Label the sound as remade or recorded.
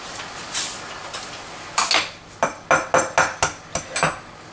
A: recorded